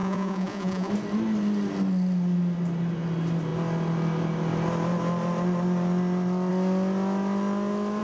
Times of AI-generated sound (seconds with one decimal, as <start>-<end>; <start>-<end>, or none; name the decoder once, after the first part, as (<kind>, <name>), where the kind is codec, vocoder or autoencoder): 0.0-0.9 (vocoder, Vocos)